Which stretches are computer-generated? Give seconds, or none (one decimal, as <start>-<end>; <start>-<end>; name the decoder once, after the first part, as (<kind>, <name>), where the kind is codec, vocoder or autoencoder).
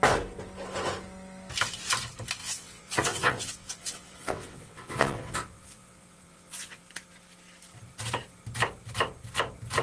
2.4-6.8 (vocoder, WaveNeXt)